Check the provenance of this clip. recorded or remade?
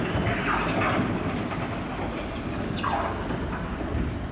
recorded